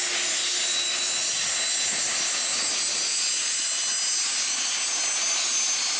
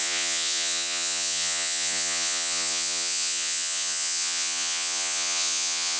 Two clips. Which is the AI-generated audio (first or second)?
second